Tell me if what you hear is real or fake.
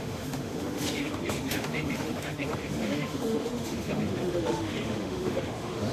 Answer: fake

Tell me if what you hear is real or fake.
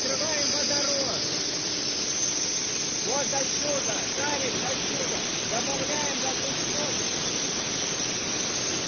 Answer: real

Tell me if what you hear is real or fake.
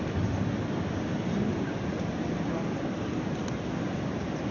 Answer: real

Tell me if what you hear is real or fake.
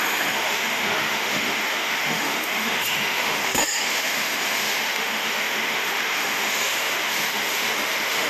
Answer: fake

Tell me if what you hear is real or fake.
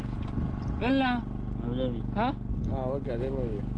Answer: real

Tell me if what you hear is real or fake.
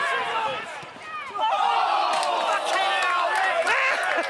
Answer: real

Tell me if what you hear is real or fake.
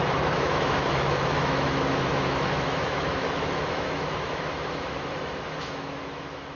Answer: fake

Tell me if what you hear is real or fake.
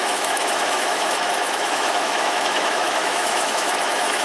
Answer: fake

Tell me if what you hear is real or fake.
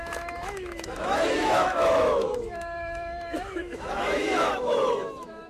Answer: fake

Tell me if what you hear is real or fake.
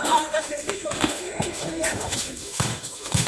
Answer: fake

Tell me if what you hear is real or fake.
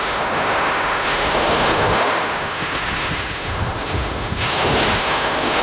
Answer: fake